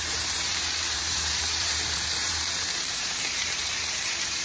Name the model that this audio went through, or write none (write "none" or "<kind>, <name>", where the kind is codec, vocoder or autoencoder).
vocoder, BigVGAN v2